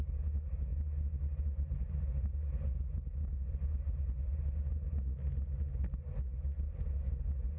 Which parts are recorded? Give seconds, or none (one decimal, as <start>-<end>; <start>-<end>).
0.0-7.6